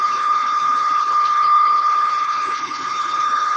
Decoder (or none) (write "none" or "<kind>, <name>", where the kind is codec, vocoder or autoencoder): codec, HILCodec